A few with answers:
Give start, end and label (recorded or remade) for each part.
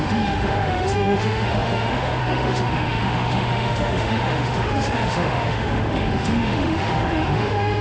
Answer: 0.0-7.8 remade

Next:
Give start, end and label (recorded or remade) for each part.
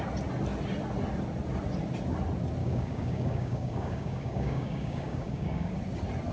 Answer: 0.0-2.6 recorded; 2.6-5.7 remade; 5.7-6.3 recorded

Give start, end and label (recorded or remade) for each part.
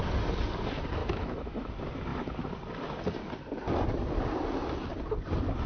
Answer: 0.0-1.0 recorded; 1.0-1.7 remade; 1.7-5.7 recorded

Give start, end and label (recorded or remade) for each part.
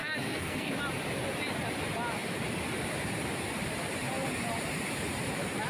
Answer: 0.0-0.7 remade; 0.7-5.7 recorded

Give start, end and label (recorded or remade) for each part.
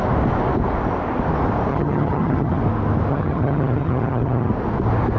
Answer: 0.0-1.7 recorded; 1.7-2.6 remade; 2.6-3.1 recorded; 3.1-4.5 remade; 4.5-5.2 recorded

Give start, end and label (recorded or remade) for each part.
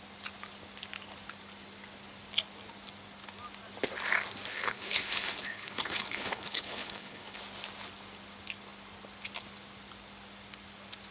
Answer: 0.0-4.5 recorded; 4.5-7.4 remade; 7.4-11.1 recorded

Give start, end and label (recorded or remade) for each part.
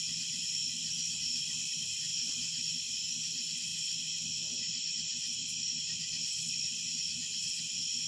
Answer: 0.0-0.6 remade; 0.6-1.4 recorded; 1.4-2.1 remade; 2.1-2.9 recorded; 2.9-3.7 remade; 3.7-6.4 recorded; 6.4-8.1 remade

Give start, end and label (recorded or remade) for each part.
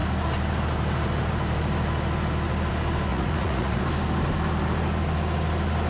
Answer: 0.0-3.1 recorded; 3.1-3.8 remade; 3.8-5.9 recorded